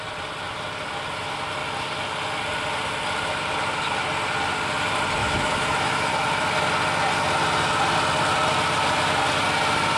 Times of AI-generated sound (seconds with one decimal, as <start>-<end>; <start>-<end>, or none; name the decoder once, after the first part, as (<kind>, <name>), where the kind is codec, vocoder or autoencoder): 5.2-6.1 (autoencoder, DAC-VAE)